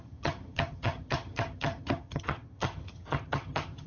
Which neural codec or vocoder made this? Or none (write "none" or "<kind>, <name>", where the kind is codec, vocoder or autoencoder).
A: vocoder, HiFi-GAN